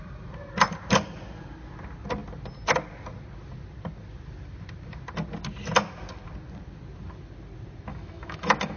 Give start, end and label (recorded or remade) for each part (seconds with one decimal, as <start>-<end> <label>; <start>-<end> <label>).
0.0-7.9 recorded; 7.9-8.8 remade